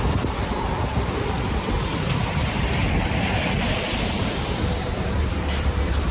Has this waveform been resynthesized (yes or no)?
yes